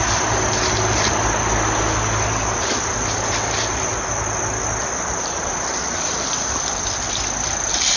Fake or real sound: real